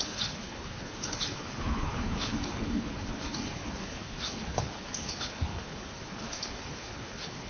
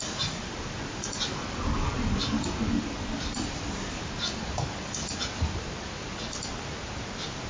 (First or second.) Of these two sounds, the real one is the second